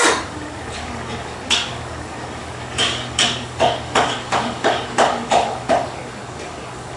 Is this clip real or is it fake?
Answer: fake